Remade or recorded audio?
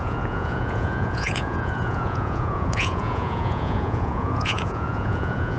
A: remade